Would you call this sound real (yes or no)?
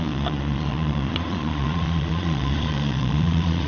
no